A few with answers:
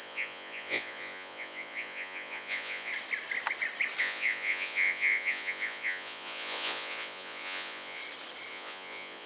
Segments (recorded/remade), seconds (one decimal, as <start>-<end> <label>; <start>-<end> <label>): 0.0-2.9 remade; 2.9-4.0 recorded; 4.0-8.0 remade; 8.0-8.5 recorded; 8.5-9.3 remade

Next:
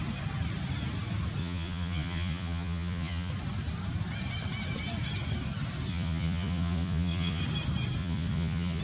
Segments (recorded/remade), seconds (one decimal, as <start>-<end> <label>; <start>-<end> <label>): 0.0-1.4 recorded; 1.4-3.3 remade; 3.3-5.9 recorded; 5.9-7.4 remade; 7.4-8.0 recorded; 8.0-8.8 remade

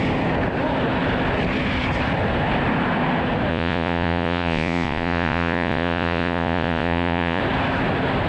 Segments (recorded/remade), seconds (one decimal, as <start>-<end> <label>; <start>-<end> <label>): 0.0-3.5 recorded; 3.5-7.4 remade; 7.4-8.3 recorded

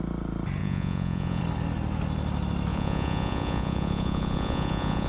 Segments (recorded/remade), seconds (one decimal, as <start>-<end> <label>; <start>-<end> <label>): 0.0-0.6 recorded; 0.6-1.4 remade; 1.4-2.7 recorded; 2.7-5.1 remade

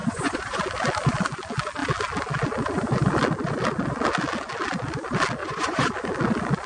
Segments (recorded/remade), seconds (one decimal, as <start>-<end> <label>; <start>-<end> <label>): 0.0-0.6 remade; 0.6-5.4 recorded; 5.4-5.9 remade; 5.9-6.7 recorded

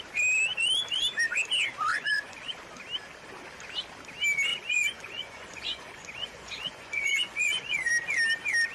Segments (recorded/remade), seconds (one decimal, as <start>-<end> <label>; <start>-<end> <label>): 0.0-1.9 recorded; 1.9-2.5 remade; 2.5-4.5 recorded; 4.5-7.9 remade; 7.9-8.7 recorded